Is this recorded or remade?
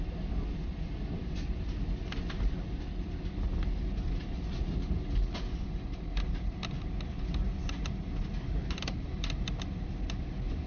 recorded